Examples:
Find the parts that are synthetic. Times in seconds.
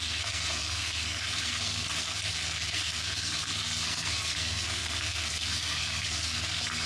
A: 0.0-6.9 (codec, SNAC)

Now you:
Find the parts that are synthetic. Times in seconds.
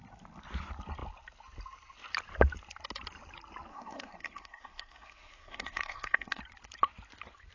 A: 3.7-6.4 (codec, SNAC)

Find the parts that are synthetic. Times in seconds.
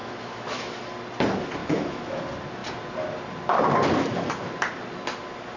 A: 0.0-0.7 (autoencoder, DAC-VAE); 1.6-2.2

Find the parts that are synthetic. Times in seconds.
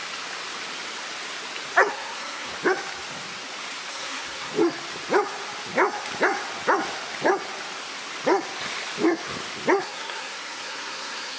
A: 1.9-2.5 (codec, SNAC); 3.9-4.5; 9.8-11.4